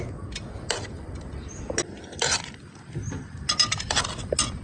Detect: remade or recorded recorded